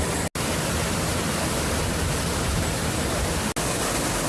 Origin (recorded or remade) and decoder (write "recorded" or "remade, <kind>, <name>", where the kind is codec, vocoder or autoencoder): recorded